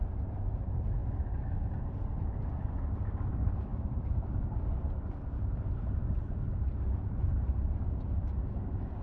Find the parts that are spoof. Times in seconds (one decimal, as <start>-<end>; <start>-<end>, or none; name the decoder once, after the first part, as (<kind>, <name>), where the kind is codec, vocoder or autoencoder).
0.0-1.0 (vocoder, BigVGAN v2); 2.7-6.0